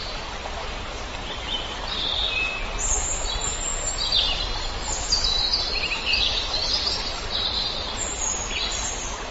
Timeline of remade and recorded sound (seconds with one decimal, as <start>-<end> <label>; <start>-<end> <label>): 0.0-9.3 recorded